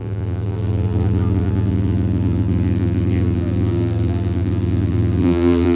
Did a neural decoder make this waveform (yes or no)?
yes